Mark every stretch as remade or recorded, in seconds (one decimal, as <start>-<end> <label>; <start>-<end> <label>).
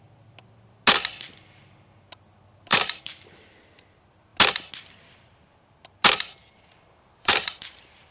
0.0-2.7 recorded; 2.7-3.2 remade; 3.2-6.4 recorded; 6.4-8.1 remade